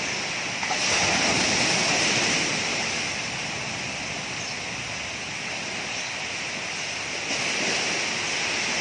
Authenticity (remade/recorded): recorded